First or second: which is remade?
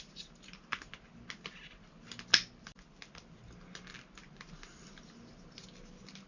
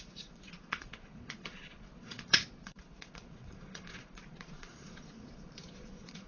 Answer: second